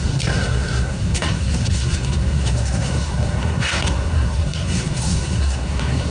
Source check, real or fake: fake